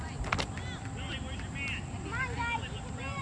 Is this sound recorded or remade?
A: recorded